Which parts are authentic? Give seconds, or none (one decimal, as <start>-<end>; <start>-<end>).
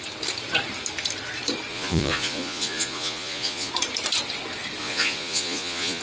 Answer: 0.0-1.7; 3.7-4.8